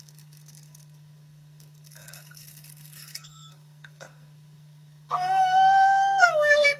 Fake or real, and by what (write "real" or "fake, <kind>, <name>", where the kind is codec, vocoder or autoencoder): fake, codec, SNAC